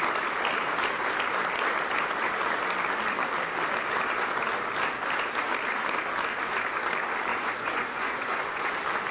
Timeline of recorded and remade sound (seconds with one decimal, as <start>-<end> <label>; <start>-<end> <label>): 0.0-7.3 recorded; 7.3-8.7 remade; 8.7-9.1 recorded